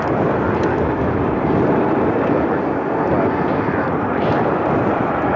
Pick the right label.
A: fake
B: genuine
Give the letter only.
B